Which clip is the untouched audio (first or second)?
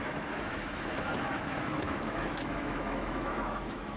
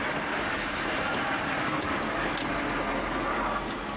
second